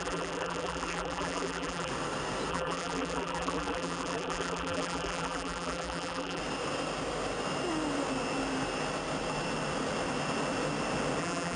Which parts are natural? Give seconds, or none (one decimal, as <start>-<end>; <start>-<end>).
1.9-2.5; 6.4-11.2